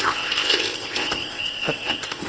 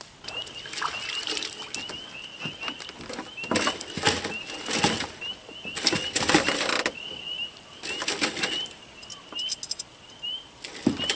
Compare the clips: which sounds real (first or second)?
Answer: second